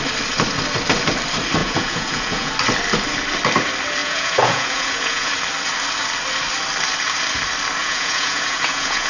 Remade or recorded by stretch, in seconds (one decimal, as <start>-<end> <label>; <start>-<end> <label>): 0.0-1.6 recorded; 1.6-2.5 remade; 2.5-4.0 recorded; 4.0-5.3 remade; 5.3-7.8 recorded; 7.8-9.1 remade